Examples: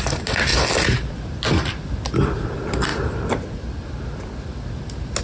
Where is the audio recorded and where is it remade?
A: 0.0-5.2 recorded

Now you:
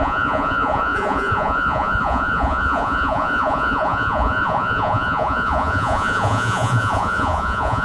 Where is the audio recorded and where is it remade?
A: 0.0-7.8 remade

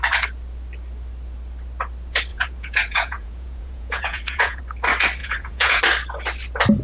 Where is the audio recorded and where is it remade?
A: 0.0-2.3 recorded; 2.3-4.6 remade; 4.6-5.2 recorded; 5.2-5.8 remade; 5.8-6.8 recorded

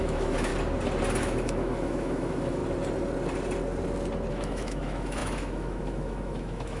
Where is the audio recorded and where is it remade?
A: 0.0-0.5 remade; 0.5-1.2 recorded; 1.2-2.6 remade; 2.6-4.3 recorded; 4.3-6.8 remade

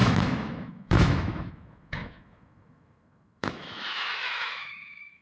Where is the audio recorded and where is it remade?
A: 0.0-5.2 remade